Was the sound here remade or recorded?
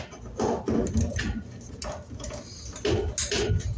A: recorded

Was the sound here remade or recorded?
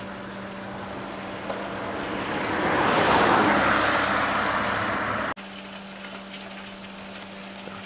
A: recorded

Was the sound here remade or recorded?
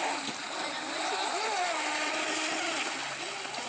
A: recorded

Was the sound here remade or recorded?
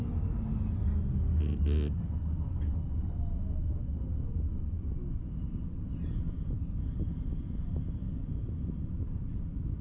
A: recorded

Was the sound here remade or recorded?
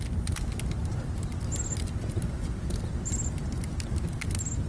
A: recorded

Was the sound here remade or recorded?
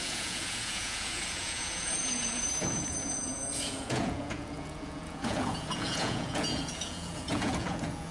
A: remade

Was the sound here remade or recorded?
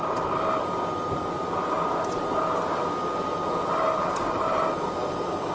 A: recorded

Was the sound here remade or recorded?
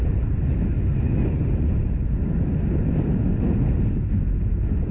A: recorded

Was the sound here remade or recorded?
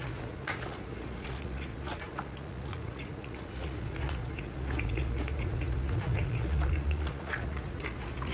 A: remade